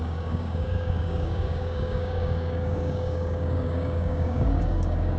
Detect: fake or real fake